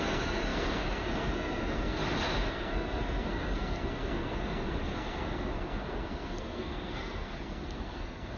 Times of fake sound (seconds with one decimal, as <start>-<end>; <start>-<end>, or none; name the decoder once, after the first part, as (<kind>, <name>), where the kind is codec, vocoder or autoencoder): 0.0-2.0 (codec, SNAC); 2.5-8.4